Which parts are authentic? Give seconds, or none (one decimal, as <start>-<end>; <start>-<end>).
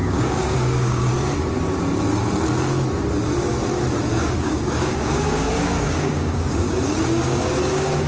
1.1-4.1